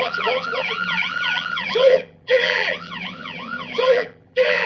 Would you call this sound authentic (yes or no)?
no